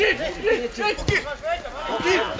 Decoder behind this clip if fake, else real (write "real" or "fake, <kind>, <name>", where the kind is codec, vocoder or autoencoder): real